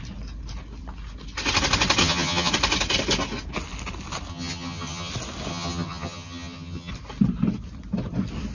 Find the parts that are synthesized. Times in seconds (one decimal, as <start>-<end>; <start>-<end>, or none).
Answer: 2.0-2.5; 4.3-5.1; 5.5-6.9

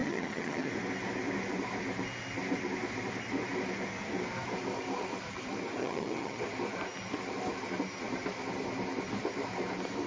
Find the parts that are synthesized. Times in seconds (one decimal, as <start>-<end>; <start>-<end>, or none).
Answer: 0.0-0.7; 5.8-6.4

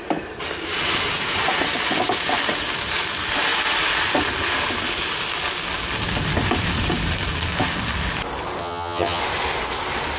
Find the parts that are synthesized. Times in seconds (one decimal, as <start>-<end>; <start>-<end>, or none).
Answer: 8.6-9.2

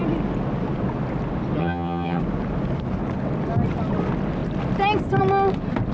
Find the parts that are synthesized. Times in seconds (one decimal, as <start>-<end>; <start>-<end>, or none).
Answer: 1.6-2.2

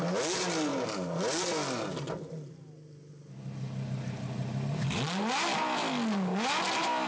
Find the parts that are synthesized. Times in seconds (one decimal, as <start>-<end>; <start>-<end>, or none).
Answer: none

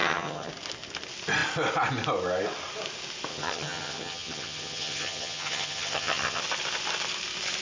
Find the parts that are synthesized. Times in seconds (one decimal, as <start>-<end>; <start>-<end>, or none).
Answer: 0.0-0.5; 3.3-6.4